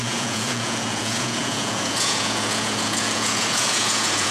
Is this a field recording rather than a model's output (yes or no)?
no